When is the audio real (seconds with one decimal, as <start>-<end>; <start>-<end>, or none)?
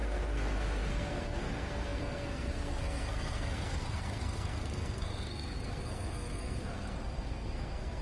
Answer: none